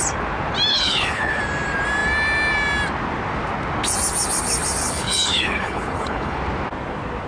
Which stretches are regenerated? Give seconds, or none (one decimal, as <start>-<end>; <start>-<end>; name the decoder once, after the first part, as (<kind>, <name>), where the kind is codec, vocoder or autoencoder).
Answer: 0.7-1.4 (codec, HILCodec); 4.8-6.4